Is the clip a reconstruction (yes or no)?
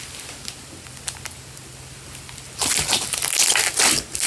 no